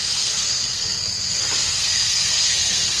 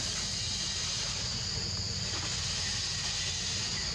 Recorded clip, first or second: second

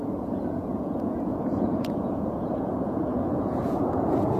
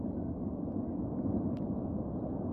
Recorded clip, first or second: second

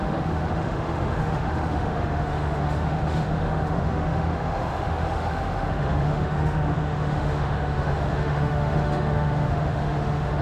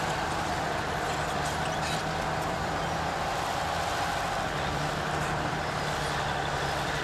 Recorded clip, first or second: second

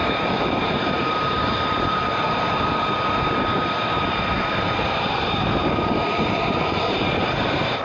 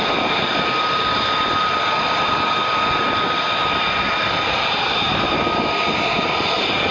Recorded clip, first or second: second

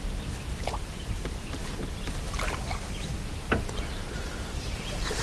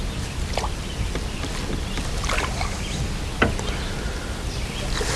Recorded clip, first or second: second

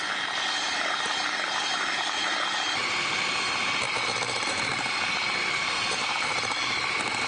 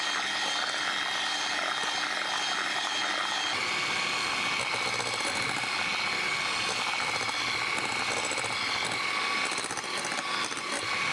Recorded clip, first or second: second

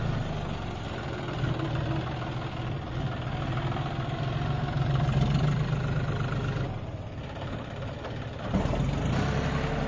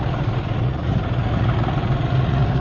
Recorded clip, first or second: first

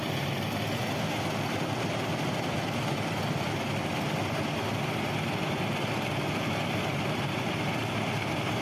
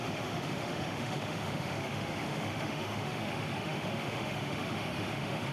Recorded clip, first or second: first